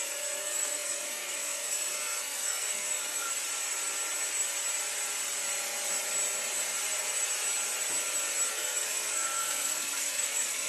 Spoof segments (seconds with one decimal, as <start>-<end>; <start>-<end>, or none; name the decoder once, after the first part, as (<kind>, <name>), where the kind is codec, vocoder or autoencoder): 0.0-3.3 (codec, SNAC); 8.5-10.7